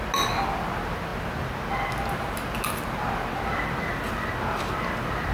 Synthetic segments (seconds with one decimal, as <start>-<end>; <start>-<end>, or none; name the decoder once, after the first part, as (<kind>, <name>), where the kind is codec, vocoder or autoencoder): none